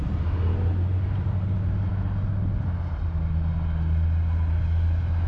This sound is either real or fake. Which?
real